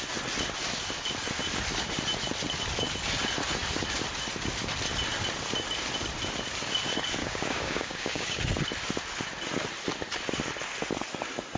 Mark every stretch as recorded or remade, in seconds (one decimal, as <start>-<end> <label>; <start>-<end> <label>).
0.0-7.2 recorded; 7.2-8.4 remade; 8.4-11.6 recorded